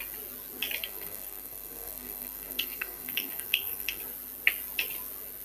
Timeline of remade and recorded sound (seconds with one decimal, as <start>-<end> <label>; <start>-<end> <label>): 0.0-0.8 recorded; 0.8-4.0 remade; 4.0-5.4 recorded